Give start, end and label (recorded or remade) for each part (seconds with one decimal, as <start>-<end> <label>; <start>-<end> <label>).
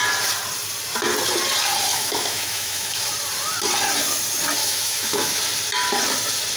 0.0-1.9 recorded; 1.9-3.1 remade; 3.1-4.6 recorded; 4.6-5.4 remade; 5.4-6.6 recorded